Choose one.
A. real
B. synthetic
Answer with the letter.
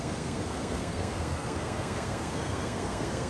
B